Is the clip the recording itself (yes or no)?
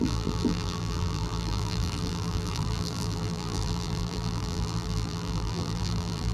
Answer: no